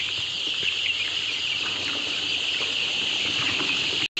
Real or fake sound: real